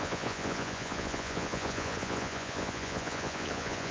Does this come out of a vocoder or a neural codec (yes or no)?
yes